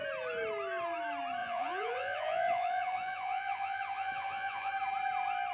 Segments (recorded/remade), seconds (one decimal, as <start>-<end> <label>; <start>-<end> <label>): 0.0-1.4 recorded; 1.4-4.7 remade; 4.7-5.5 recorded